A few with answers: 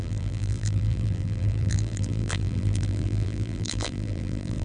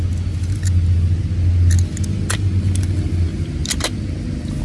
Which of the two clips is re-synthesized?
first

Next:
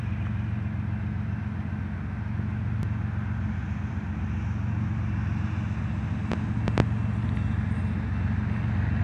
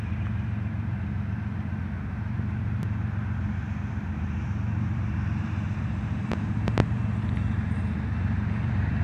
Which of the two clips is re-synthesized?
second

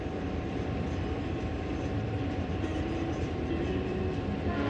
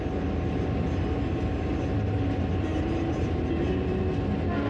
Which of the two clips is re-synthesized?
first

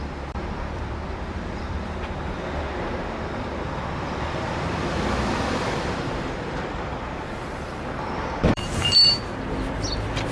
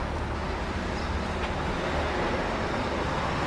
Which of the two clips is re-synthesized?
first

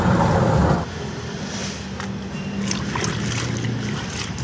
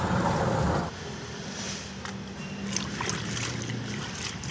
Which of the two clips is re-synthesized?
second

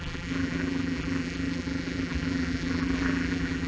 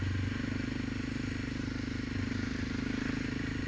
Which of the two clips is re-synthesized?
first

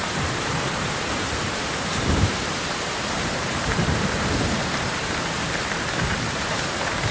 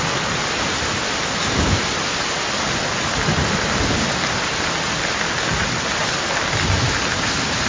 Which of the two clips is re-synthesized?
first